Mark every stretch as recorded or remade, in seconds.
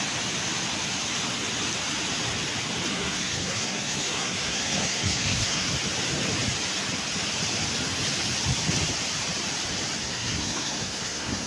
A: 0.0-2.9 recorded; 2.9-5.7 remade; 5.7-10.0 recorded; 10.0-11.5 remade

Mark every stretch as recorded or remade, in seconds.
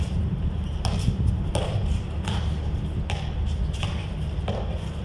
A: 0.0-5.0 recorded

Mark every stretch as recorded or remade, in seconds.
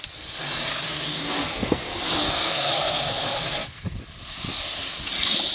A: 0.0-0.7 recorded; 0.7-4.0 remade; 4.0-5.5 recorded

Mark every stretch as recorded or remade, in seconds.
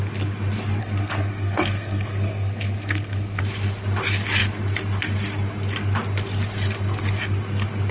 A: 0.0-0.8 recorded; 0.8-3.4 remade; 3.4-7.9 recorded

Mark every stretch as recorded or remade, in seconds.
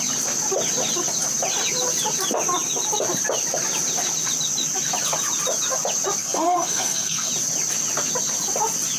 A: 0.0-6.2 recorded; 6.2-7.3 remade; 7.3-9.0 recorded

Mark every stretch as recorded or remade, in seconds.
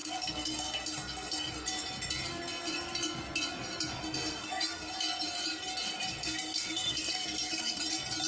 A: 0.0-1.5 remade; 1.5-4.0 recorded; 4.0-4.9 remade; 4.9-6.2 recorded; 6.2-7.8 remade; 7.8-8.3 recorded